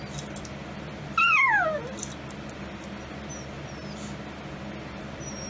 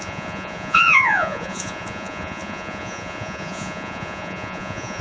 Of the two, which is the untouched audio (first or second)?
first